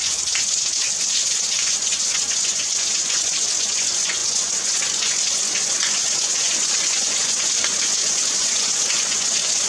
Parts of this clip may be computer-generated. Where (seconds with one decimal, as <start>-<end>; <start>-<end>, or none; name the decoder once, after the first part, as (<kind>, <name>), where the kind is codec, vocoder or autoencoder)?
0.0-9.7 (vocoder, Vocos)